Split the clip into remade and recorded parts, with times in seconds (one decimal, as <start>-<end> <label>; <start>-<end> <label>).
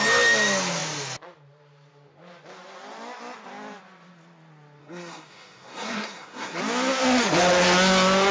0.0-4.8 recorded; 4.8-6.6 remade; 6.6-8.3 recorded